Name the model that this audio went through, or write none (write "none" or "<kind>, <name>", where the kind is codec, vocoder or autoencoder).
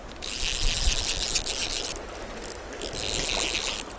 none